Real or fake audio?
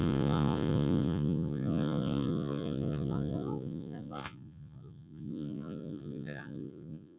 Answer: fake